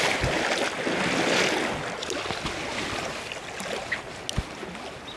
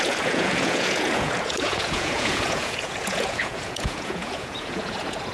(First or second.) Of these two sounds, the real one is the first